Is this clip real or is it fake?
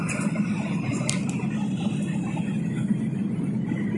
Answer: real